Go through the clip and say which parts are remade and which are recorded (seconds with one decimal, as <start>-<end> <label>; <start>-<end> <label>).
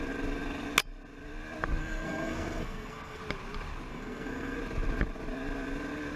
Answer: 0.0-1.8 recorded; 1.8-3.2 remade; 3.2-3.9 recorded; 3.9-4.6 remade; 4.6-6.2 recorded